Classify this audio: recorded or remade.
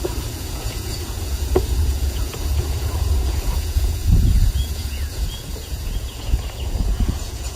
remade